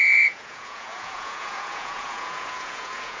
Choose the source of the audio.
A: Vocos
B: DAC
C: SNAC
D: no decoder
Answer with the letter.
A